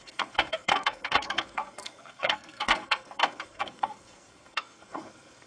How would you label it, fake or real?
fake